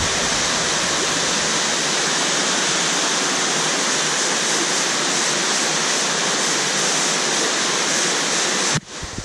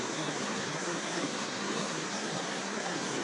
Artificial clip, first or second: second